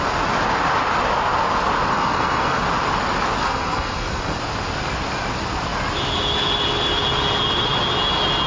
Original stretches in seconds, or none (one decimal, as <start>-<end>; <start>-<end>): 0.0-1.9; 2.6-3.4; 4.4-8.5